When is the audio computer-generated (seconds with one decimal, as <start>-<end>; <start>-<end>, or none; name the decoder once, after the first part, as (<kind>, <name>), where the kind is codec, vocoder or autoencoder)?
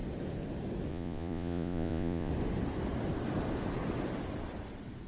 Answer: 0.9-2.3 (vocoder, Vocos)